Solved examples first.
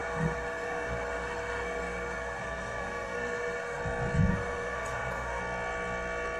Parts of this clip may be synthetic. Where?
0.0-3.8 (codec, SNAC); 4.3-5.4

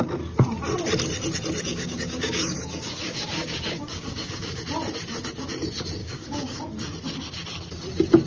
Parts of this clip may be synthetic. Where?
1.7-4.6 (codec, DAC); 6.0-6.6

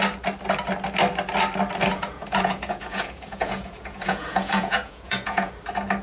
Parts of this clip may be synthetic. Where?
1.9-5.5 (vocoder, Vocos)

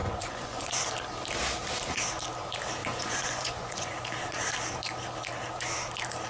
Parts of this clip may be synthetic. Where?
0.0-0.8 (vocoder, Vocos); 2.8-3.9

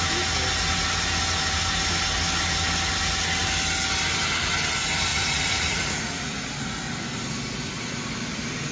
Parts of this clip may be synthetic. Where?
5.1-6.5 (vocoder, Vocos)

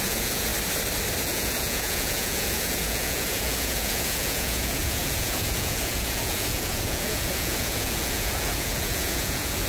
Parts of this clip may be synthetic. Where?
0.0-0.5 (vocoder, Vocos); 1.2-9.7

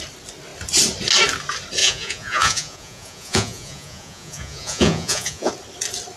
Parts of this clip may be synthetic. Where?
1.8-5.5 (vocoder, Vocos)

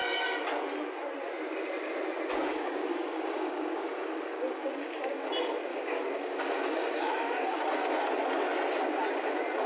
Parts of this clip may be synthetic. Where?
2.5-5.3 (codec, DAC); 5.7-8.1